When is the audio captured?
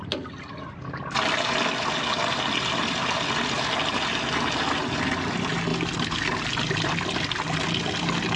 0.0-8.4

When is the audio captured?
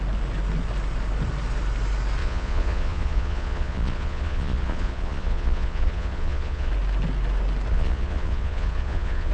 0.0-2.2; 6.7-7.7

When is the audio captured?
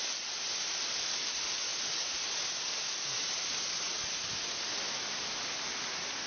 0.0-6.3